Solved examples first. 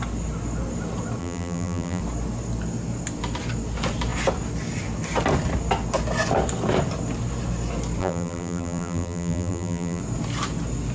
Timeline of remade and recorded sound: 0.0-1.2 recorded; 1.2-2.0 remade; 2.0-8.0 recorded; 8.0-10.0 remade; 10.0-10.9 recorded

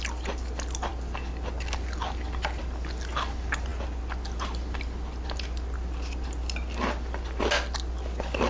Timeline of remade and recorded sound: 0.0-8.5 recorded

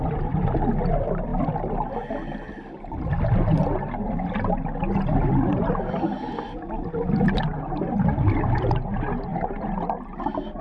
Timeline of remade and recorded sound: 0.0-10.6 recorded

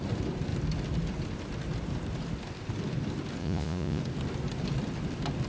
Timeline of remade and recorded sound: 0.0-3.4 recorded; 3.4-4.0 remade; 4.0-5.5 recorded

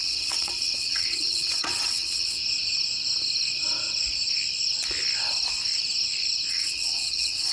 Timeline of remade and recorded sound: 0.0-2.4 remade; 2.4-6.5 recorded; 6.5-7.5 remade

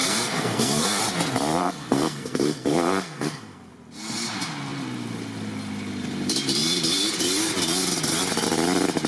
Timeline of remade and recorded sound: 0.0-1.0 remade; 1.0-1.6 recorded; 1.6-3.7 remade; 3.7-9.1 recorded

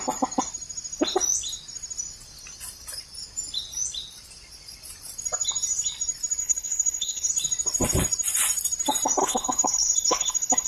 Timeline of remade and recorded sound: 0.0-6.4 recorded; 6.4-7.3 remade; 7.3-9.2 recorded; 9.2-10.7 remade